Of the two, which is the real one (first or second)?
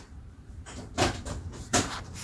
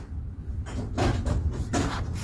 second